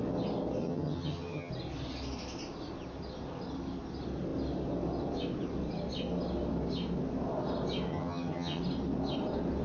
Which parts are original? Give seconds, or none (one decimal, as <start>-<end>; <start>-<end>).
0.0-0.6; 1.5-7.9; 8.6-9.6